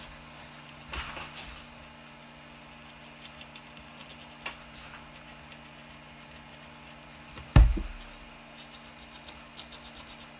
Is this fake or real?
real